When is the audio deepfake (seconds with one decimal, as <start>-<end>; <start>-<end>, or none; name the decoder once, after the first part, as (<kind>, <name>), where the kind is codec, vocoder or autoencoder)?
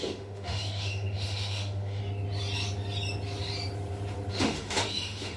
0.0-2.0 (autoencoder, DAC-VAE); 4.3-5.4